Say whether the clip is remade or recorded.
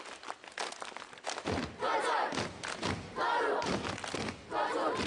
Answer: recorded